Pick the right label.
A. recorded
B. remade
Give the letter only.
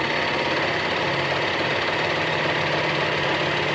A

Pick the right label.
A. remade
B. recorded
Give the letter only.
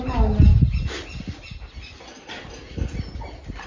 B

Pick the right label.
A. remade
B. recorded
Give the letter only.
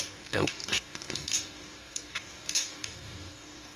A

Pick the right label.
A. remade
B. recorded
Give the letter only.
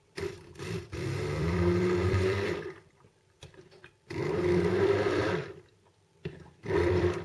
A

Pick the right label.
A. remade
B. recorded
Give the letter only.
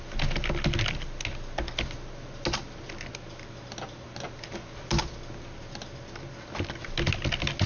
B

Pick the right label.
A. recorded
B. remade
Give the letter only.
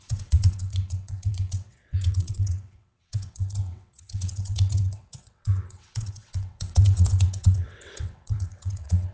B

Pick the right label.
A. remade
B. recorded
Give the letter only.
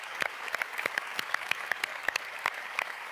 A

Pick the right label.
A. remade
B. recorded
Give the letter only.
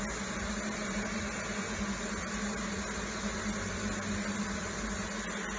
B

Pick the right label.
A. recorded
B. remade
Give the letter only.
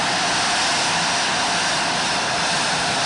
A